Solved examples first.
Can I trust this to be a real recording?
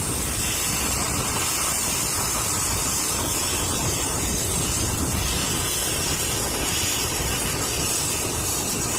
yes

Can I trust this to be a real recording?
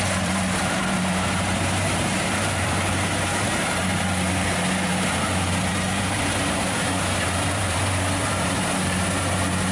no